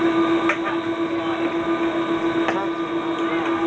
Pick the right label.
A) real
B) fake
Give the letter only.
A